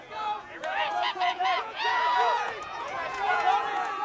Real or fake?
fake